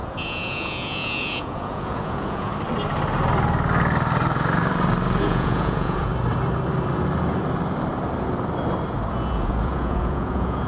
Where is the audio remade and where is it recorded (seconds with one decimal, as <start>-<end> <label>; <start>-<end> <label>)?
0.0-2.5 remade; 2.5-5.2 recorded; 5.2-6.1 remade; 6.1-9.1 recorded; 9.1-10.7 remade

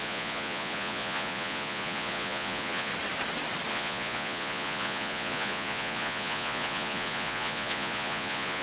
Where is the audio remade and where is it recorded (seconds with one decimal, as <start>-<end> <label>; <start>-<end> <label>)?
0.0-2.9 remade; 2.9-3.7 recorded; 3.7-8.6 remade

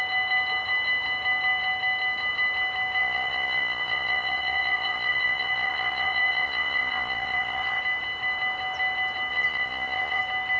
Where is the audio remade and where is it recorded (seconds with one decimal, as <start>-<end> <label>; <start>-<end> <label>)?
0.0-3.0 recorded; 3.0-7.8 remade; 7.8-9.3 recorded; 9.3-10.2 remade; 10.2-10.6 recorded